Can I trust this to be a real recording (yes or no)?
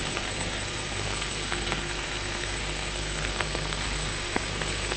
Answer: no